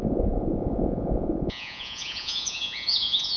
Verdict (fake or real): fake